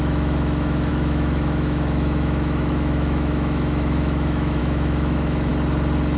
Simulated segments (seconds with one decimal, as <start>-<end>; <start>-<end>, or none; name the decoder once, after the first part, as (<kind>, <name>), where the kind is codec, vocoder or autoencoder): 0.0-5.5 (autoencoder, DAC-VAE)